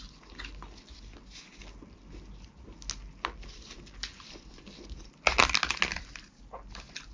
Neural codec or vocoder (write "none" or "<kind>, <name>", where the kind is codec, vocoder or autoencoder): none